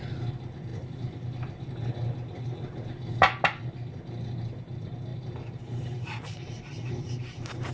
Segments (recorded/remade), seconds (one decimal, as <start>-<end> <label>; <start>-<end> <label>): 0.0-5.1 recorded; 5.1-7.7 remade